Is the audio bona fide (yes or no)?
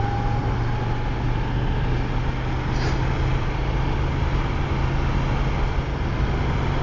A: yes